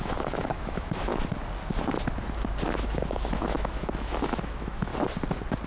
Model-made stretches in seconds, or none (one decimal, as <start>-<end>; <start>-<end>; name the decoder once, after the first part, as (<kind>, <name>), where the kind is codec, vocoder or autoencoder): 0.0-1.1 (autoencoder, DAC-VAE); 2.8-4.9